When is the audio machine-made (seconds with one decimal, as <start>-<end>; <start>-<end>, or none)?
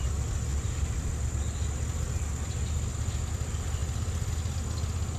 none